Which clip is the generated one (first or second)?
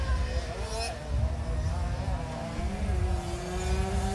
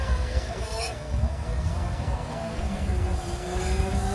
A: second